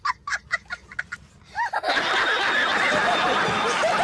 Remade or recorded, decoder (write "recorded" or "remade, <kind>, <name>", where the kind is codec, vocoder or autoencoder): recorded